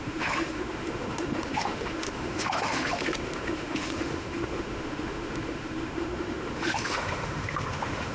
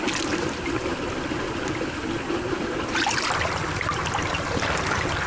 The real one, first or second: second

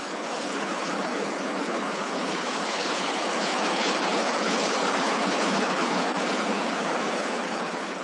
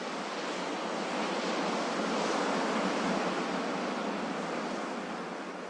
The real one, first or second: second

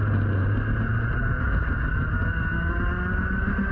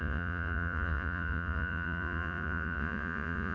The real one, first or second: first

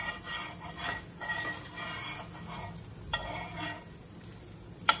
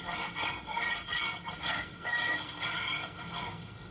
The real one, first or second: first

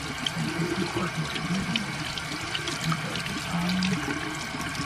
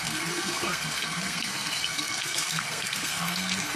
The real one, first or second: first